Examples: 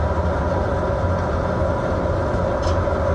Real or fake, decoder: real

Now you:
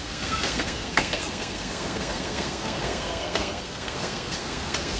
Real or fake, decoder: fake, codec, SNAC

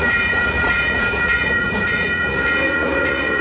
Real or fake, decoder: fake, vocoder, Vocos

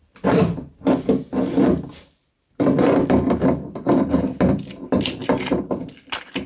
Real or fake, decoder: real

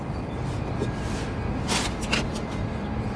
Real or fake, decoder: real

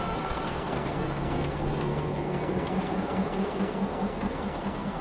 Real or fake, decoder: fake, codec, SNAC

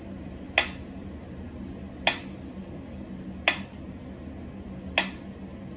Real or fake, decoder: real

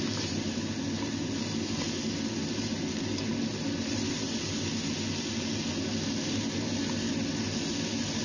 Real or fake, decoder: real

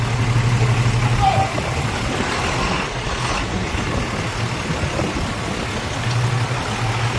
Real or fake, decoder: real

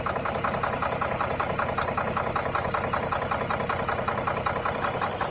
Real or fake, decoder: real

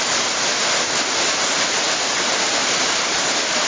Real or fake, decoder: real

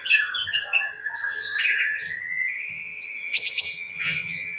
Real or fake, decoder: fake, vocoder, HiFi-GAN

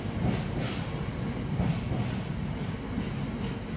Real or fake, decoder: real